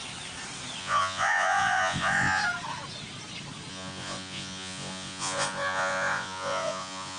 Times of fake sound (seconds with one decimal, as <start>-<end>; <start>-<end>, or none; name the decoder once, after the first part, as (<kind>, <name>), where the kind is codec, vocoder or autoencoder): 0.8-2.4 (vocoder, Vocos); 3.7-7.2